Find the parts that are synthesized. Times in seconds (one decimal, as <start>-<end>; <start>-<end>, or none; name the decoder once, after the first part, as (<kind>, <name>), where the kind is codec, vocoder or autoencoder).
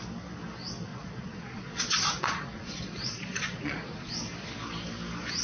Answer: 0.9-4.1 (vocoder, Vocos)